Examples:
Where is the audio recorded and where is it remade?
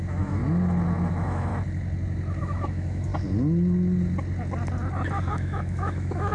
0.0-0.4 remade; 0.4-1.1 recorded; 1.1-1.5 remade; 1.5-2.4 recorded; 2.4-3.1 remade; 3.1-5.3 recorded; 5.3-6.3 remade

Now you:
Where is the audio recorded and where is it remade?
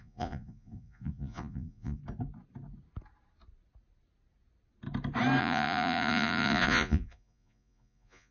0.0-2.0 remade; 2.0-5.4 recorded; 5.4-8.3 remade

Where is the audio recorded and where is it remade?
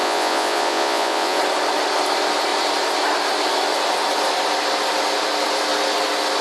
0.0-1.4 remade; 1.4-6.4 recorded